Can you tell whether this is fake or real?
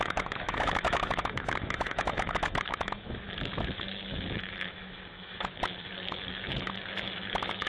fake